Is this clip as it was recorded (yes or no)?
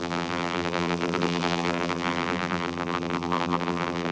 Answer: no